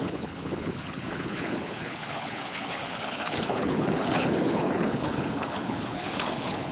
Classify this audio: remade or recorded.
remade